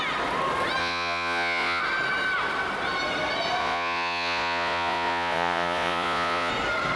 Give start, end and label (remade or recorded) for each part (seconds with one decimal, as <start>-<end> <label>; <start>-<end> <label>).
0.0-0.8 recorded; 0.8-1.8 remade; 1.8-3.6 recorded; 3.6-6.5 remade; 6.5-7.0 recorded